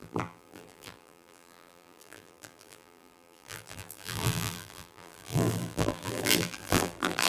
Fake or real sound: fake